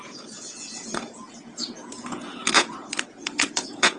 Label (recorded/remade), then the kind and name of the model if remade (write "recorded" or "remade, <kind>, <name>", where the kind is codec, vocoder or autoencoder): remade, vocoder, Vocos